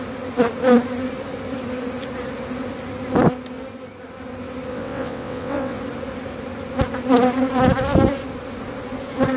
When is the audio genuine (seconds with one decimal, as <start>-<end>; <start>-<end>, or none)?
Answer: 0.0-4.7; 5.8-9.4